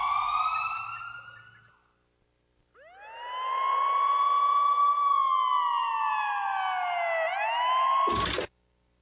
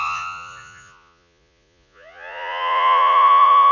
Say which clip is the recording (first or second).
first